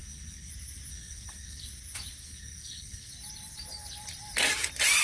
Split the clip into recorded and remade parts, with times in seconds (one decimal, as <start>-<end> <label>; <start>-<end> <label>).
0.0-0.5 remade; 0.5-0.9 recorded; 0.9-1.6 remade; 1.6-2.2 recorded; 2.2-3.1 remade; 3.1-5.0 recorded